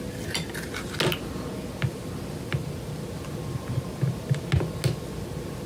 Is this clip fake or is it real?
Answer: real